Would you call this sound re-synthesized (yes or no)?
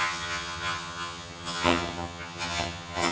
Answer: yes